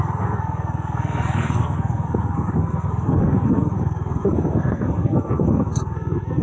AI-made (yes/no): yes